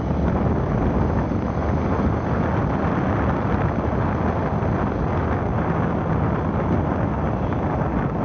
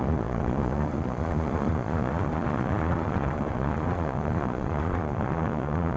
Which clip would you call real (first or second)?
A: first